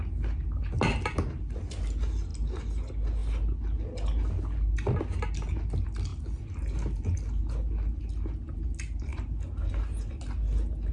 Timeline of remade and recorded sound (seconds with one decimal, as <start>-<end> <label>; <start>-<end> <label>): 0.0-10.9 recorded